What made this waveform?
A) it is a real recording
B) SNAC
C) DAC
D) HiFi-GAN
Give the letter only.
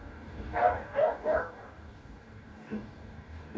C